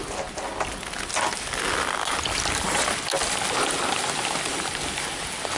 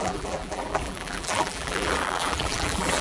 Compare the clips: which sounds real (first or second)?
first